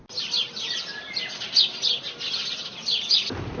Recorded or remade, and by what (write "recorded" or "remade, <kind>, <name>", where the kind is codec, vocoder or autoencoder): recorded